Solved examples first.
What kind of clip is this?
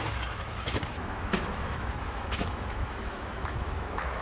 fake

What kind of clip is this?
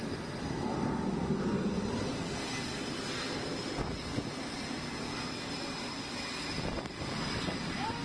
real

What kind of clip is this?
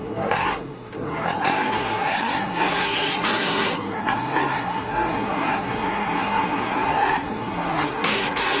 fake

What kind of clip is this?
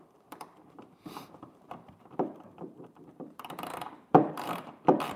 fake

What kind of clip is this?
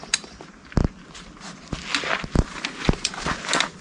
real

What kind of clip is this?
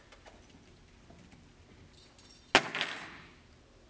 real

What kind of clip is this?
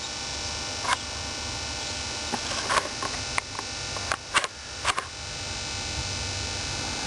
real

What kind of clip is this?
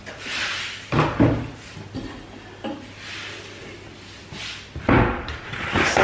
real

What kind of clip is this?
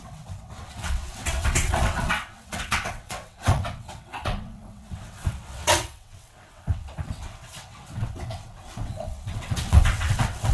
fake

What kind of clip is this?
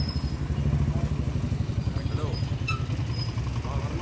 real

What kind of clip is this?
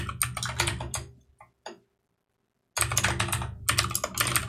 real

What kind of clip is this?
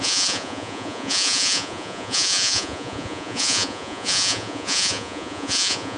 fake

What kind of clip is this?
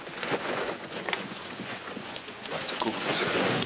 fake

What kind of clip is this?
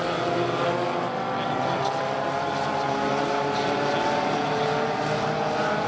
real